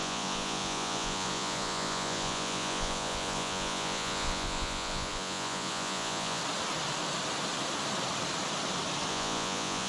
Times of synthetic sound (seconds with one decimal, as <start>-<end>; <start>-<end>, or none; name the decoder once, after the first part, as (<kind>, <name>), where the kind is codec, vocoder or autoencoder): 0.0-6.4 (vocoder, Vocos); 9.1-9.9

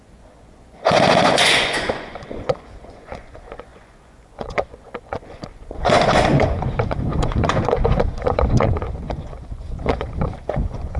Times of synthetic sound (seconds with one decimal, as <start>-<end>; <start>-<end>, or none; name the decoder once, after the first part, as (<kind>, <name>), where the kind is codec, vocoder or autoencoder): 0.0-11.0 (vocoder, Vocos)

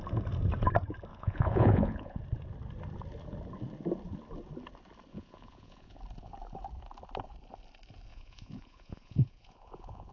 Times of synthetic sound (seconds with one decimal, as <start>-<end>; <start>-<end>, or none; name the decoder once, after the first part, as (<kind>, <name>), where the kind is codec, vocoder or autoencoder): 1.1-2.2 (vocoder, Vocos); 5.1-6.0; 8.1-10.1

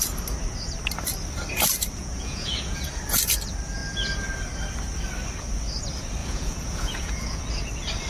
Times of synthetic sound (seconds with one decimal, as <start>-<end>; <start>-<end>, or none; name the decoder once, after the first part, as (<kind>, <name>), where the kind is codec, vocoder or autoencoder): 2.0-2.8 (vocoder, Vocos); 6.2-7.4

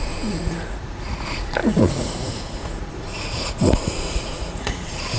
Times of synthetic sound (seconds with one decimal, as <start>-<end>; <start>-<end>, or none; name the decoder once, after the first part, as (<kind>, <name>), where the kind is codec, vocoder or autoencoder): 0.0-5.2 (vocoder, Vocos)